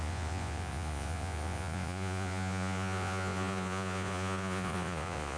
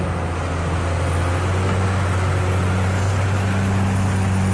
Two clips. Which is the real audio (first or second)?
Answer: second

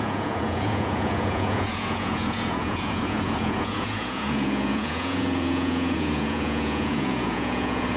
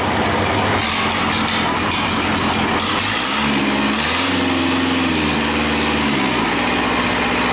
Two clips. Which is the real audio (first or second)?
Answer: second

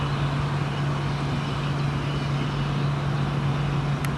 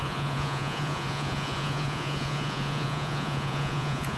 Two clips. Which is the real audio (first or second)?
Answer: first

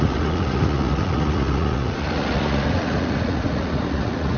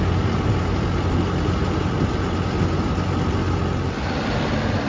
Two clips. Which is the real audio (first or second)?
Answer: second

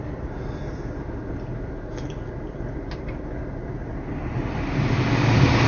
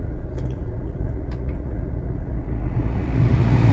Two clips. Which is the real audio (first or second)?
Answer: first